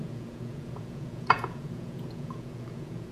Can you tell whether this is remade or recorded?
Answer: remade